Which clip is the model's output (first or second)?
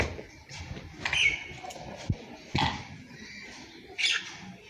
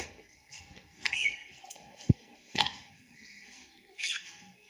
second